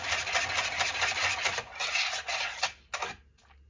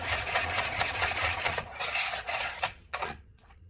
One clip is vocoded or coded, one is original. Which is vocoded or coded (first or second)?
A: second